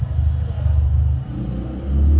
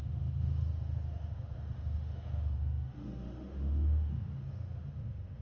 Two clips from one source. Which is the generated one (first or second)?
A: second